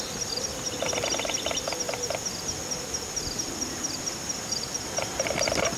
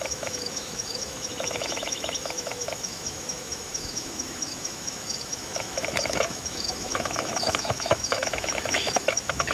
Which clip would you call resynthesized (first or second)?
second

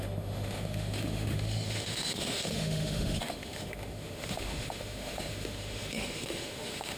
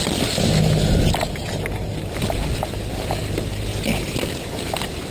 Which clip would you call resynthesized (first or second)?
first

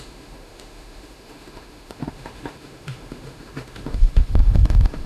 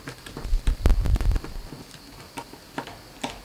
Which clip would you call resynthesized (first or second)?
first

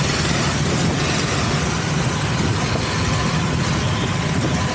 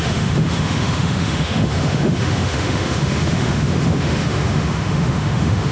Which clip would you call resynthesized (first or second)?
second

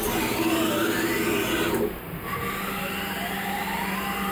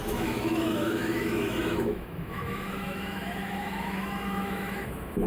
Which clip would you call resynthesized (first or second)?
second